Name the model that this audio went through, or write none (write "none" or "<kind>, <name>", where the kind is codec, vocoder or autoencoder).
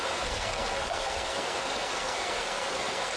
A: codec, SNAC